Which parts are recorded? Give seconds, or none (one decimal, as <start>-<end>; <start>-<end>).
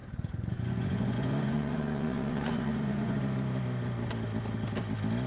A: 3.2-5.3